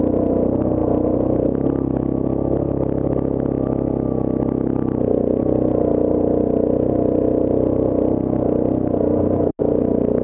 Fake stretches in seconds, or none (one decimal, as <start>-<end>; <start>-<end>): none